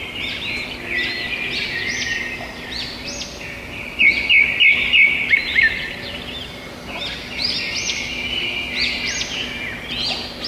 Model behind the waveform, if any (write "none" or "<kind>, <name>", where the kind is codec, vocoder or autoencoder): none